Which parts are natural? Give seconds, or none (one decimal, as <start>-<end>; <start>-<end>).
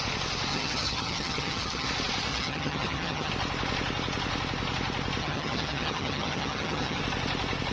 0.0-0.5; 1.9-2.3; 3.3-5.2; 7.0-7.7